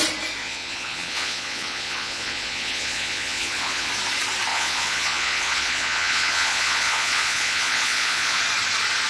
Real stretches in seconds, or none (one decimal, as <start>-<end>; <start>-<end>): 0.0-0.4; 3.9-4.5; 8.4-9.1

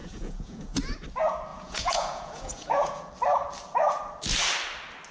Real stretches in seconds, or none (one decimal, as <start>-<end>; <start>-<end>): 0.8-1.5; 3.1-5.1

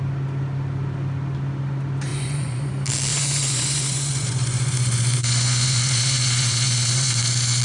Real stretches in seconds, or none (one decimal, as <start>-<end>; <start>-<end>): 0.0-2.1; 2.7-3.1